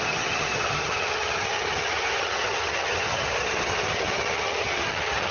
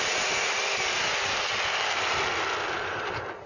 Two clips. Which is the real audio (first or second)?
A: second